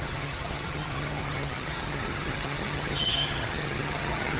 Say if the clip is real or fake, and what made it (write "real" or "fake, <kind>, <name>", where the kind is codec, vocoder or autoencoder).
fake, vocoder, HiFi-GAN